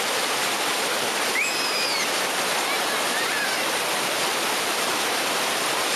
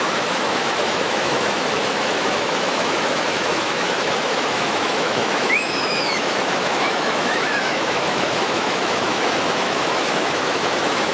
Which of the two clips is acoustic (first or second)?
first